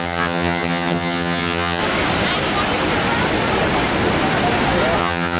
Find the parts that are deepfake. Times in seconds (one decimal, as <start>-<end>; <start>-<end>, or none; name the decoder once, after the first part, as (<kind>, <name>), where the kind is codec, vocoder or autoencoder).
0.0-1.8 (vocoder, HiFi-GAN); 5.0-5.4